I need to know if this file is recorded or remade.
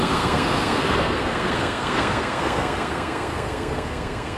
remade